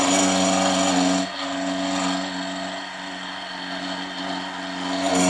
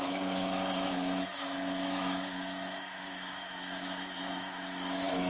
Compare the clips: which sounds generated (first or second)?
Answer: second